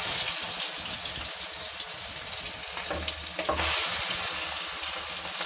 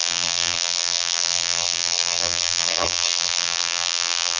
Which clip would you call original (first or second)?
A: first